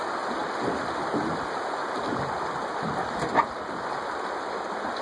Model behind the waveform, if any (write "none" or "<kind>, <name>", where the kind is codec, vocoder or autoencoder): none